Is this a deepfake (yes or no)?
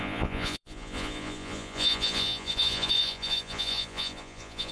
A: yes